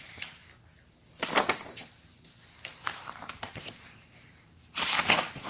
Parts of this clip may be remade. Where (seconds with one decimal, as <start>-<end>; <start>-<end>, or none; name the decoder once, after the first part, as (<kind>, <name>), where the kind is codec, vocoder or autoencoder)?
0.0-0.4 (vocoder, BigVGAN v2); 1.4-5.5